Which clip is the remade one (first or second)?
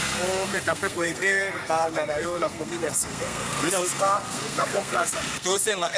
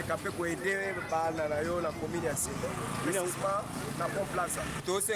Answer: first